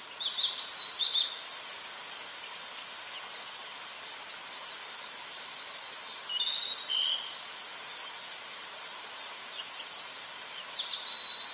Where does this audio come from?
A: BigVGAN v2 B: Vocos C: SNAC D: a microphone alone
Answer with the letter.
D